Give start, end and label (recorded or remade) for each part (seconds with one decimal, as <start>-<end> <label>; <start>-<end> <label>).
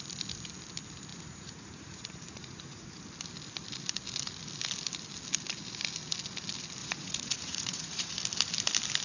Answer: 0.0-1.1 recorded; 1.1-3.0 remade; 3.0-6.8 recorded; 6.8-8.2 remade; 8.2-9.0 recorded